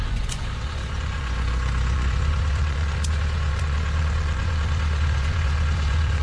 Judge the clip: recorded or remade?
remade